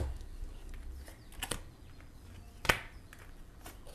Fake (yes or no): no